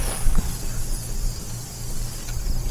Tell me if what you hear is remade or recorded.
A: recorded